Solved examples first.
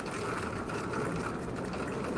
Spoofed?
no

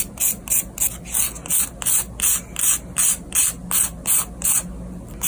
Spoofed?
no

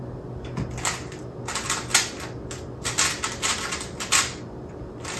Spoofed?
no